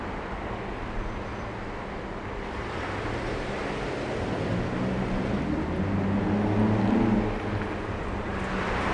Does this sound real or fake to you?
real